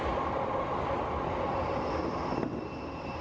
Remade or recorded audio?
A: recorded